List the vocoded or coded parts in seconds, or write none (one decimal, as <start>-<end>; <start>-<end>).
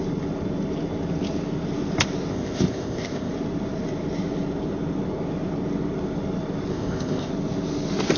2.3-3.3; 6.7-7.3